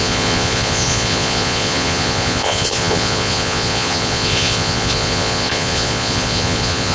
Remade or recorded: remade